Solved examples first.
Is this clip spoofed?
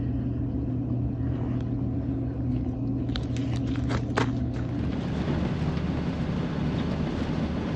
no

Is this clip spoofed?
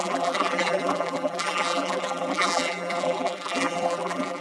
yes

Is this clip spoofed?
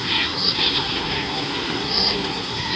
yes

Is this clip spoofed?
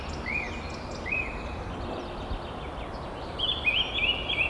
no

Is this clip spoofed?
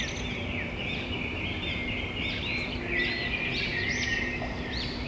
no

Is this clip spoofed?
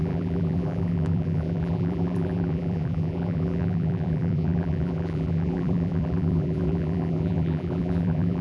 yes